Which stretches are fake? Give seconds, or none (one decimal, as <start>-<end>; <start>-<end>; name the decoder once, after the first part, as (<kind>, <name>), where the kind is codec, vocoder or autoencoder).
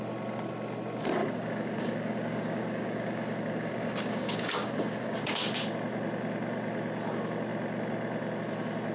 1.2-5.3 (codec, DAC)